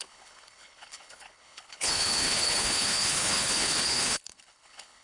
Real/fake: fake